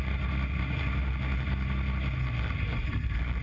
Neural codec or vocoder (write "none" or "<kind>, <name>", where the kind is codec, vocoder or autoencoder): none